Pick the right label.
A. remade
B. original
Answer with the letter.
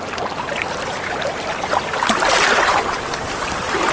B